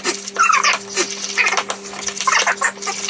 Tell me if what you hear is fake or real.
real